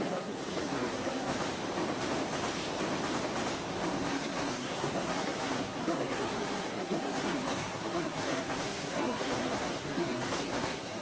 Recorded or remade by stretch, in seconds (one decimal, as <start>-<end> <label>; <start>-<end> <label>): 0.0-1.3 remade; 1.3-3.9 recorded; 3.9-11.0 remade